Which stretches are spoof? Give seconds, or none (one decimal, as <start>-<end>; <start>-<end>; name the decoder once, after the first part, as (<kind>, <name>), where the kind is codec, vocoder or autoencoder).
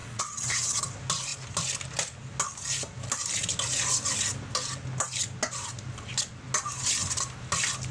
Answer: 0.0-0.8 (vocoder, WaveNeXt)